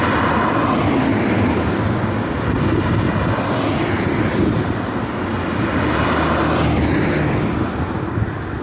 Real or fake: fake